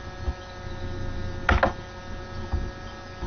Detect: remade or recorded recorded